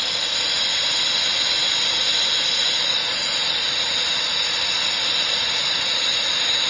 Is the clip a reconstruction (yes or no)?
no